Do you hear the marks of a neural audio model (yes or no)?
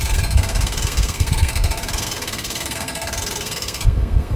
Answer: yes